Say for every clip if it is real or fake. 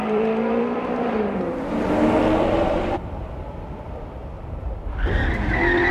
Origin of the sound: fake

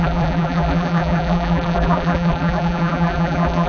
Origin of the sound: fake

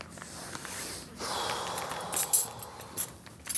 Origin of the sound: real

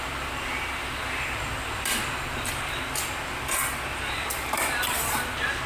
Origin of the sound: fake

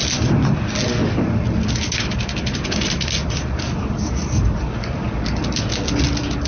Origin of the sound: real